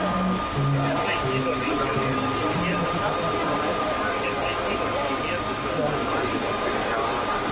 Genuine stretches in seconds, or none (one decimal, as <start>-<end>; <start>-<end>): 0.0-3.4; 4.0-7.5